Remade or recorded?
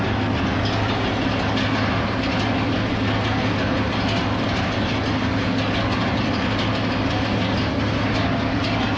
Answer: recorded